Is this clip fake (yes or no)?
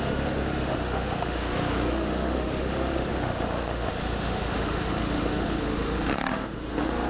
yes